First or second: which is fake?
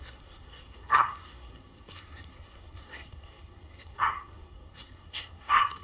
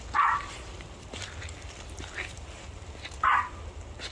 first